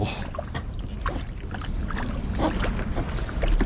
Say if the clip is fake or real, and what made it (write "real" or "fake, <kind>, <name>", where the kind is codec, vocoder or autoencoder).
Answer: real